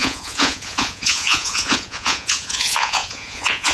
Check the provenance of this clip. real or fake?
fake